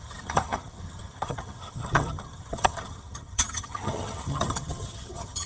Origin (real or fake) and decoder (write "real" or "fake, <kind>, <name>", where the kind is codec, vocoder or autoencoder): fake, vocoder, HiFi-GAN